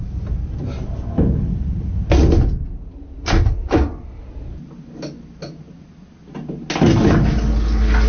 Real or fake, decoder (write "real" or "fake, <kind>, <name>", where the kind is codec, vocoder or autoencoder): real